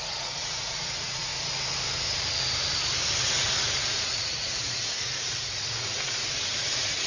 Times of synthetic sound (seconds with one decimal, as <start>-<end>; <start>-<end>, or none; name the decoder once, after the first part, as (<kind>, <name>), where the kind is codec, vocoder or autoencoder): 0.0-1.3 (vocoder, Vocos); 3.2-7.1